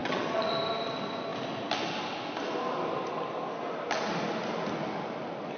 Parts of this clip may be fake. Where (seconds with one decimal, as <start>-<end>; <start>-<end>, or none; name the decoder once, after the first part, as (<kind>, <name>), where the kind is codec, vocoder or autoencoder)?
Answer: 0.0-0.5 (vocoder, WaveNeXt)